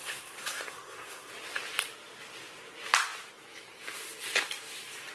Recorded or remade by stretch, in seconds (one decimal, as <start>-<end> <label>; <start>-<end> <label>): 0.0-1.3 remade; 1.3-5.1 recorded